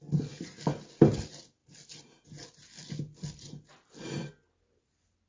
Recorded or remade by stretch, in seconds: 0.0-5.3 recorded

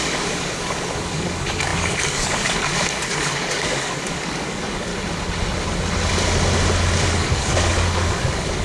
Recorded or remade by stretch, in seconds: 0.0-4.9 remade; 4.9-7.1 recorded; 7.1-8.6 remade

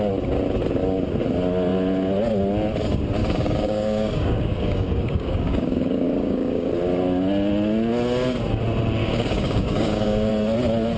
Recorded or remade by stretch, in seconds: 0.0-3.2 recorded; 3.2-6.7 remade; 6.7-9.0 recorded; 9.0-10.3 remade; 10.3-11.0 recorded

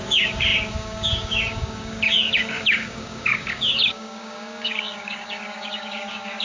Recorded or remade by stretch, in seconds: 0.0-6.4 remade

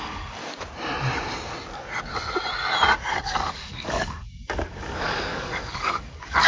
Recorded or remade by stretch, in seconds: 0.0-0.4 remade; 0.4-3.1 recorded; 3.1-6.5 remade

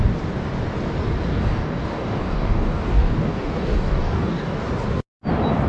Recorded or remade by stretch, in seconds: 0.0-1.3 recorded; 1.3-4.7 remade; 4.7-5.7 recorded

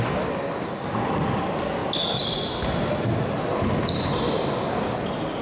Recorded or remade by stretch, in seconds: 0.0-5.4 recorded

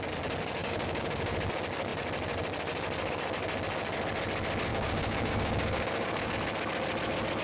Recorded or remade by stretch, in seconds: 0.0-0.6 recorded; 0.6-1.3 remade; 1.3-4.7 recorded; 4.7-6.3 remade; 6.3-7.4 recorded